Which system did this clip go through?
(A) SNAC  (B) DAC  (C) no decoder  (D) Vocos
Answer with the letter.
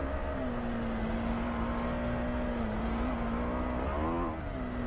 C